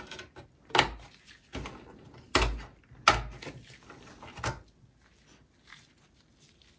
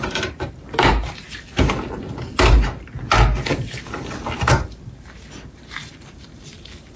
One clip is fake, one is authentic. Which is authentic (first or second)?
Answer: first